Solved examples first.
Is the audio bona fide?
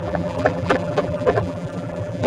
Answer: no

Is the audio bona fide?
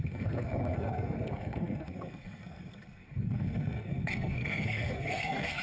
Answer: no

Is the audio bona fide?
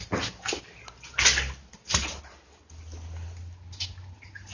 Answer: yes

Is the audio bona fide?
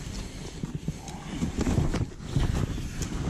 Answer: yes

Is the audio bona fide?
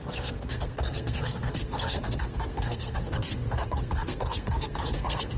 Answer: no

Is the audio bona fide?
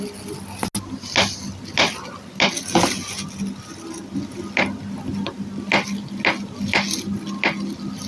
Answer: yes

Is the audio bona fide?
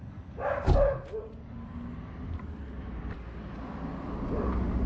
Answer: yes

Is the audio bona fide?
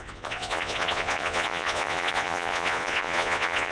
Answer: no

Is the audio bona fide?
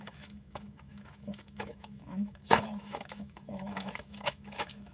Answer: no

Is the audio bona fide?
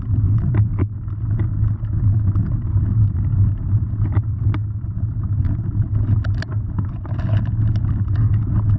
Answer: yes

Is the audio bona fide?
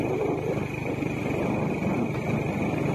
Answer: no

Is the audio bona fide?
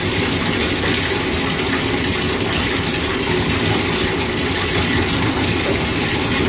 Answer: yes